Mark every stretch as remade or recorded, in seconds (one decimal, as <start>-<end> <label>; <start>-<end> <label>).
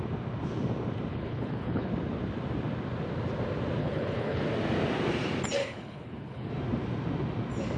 0.0-1.1 recorded; 1.1-1.9 remade; 1.9-3.8 recorded; 3.8-4.4 remade; 4.4-5.6 recorded; 5.6-6.5 remade; 6.5-7.8 recorded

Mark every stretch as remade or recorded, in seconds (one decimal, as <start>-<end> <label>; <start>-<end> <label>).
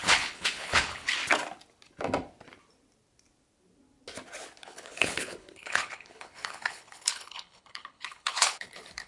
0.0-1.2 remade; 1.2-4.6 recorded; 4.6-9.1 remade